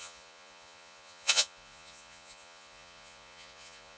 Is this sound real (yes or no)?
no